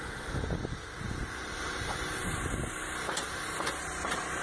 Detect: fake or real real